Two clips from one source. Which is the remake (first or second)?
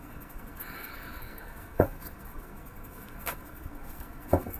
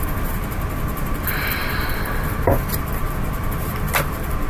first